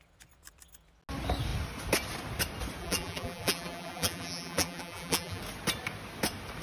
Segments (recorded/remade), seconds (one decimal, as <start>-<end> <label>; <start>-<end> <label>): 0.0-2.8 recorded; 2.8-5.4 remade; 5.4-6.6 recorded